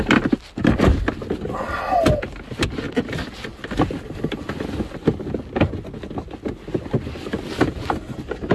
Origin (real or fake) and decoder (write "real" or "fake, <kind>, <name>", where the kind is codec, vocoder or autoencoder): real